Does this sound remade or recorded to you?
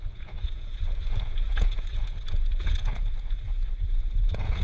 remade